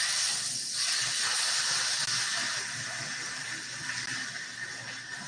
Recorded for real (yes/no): yes